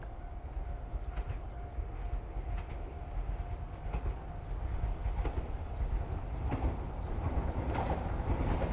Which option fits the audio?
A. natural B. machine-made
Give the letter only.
A